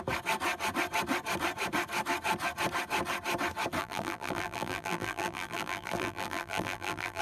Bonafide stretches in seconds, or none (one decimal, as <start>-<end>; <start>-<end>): 0.0-3.8